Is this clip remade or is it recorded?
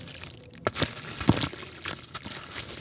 recorded